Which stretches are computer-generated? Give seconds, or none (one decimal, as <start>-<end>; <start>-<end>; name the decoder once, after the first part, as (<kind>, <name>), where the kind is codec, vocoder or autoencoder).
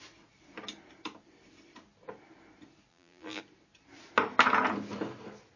2.9-3.4 (vocoder, BigVGAN v2)